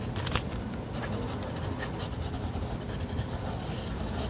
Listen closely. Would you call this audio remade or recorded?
recorded